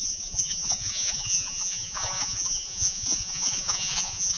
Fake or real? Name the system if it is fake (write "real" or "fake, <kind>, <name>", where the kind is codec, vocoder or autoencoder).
fake, vocoder, Vocos